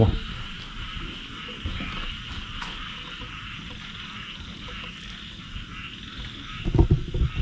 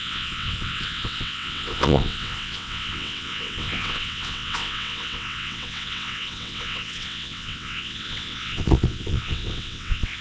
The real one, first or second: first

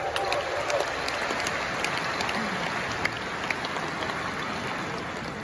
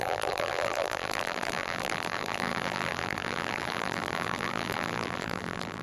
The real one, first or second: first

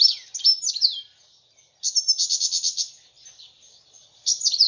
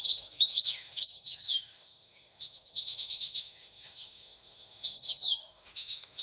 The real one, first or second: first